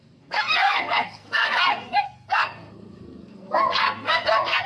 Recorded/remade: remade